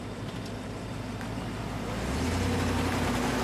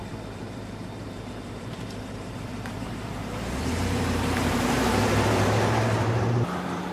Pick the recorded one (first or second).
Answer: first